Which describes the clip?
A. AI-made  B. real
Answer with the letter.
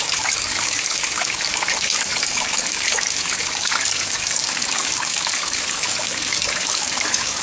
A